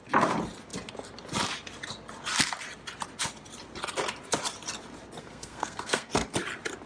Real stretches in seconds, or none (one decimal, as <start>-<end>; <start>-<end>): 0.0-5.2; 6.1-6.9